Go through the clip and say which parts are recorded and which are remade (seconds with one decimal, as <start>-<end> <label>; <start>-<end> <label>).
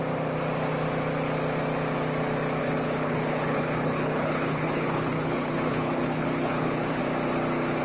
0.0-2.6 recorded; 2.6-7.0 remade; 7.0-7.8 recorded